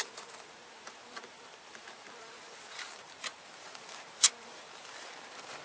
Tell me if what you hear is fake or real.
fake